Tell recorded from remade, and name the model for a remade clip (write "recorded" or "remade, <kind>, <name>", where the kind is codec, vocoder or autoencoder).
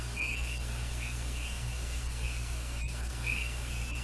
remade, codec, SNAC